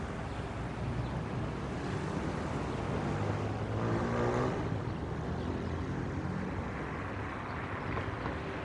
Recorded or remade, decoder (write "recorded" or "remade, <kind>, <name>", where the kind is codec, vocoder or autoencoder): recorded